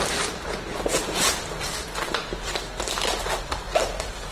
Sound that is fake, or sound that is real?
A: real